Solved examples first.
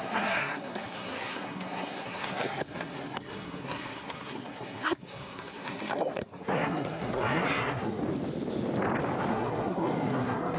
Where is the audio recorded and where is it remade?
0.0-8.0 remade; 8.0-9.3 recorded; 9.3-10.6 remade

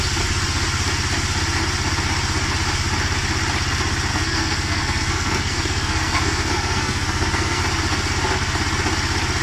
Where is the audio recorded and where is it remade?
0.0-4.1 recorded; 4.1-7.6 remade; 7.6-9.4 recorded

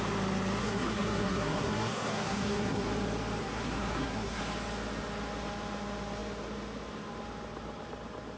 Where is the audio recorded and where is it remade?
0.0-0.6 recorded; 0.6-2.9 remade; 2.9-3.4 recorded; 3.4-4.4 remade; 4.4-8.4 recorded